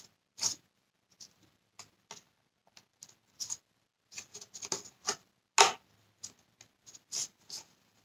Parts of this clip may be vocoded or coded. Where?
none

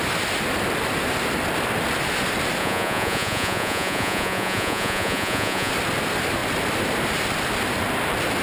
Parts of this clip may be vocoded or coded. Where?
2.6-5.7 (vocoder, Vocos)